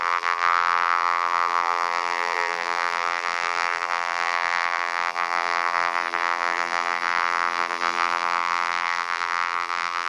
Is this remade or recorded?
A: remade